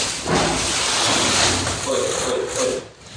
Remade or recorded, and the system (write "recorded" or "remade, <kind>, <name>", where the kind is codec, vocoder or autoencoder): recorded